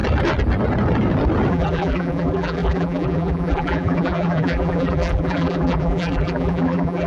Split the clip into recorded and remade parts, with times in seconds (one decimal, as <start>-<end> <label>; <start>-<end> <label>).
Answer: 0.0-1.5 recorded; 1.5-7.1 remade